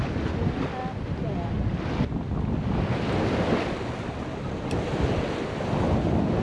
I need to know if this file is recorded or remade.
recorded